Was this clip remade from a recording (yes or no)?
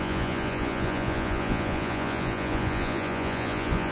yes